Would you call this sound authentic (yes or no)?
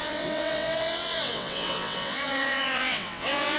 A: no